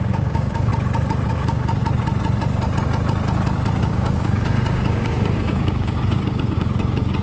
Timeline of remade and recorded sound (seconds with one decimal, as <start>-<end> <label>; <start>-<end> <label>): 0.0-0.7 remade; 0.7-1.3 recorded; 1.3-1.8 remade; 1.8-3.8 recorded; 3.8-7.2 remade